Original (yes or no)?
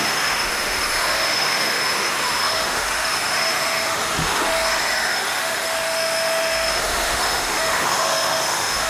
no